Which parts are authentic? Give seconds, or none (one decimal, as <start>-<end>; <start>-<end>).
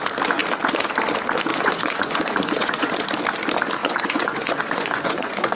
0.0-1.5; 3.0-3.8